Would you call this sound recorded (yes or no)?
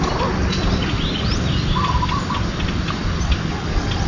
yes